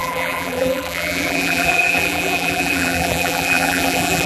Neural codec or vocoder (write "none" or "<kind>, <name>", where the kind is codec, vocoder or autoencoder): vocoder, BigVGAN v2